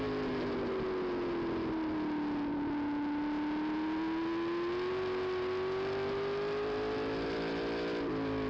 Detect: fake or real real